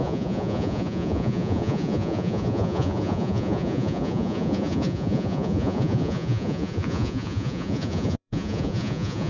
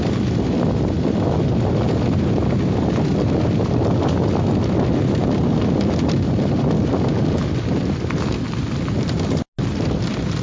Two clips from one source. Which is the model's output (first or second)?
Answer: first